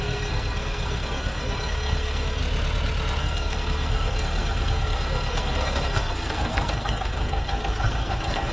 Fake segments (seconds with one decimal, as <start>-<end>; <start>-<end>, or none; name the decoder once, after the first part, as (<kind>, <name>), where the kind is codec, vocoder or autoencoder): 0.0-2.4 (codec, SNAC); 3.2-8.5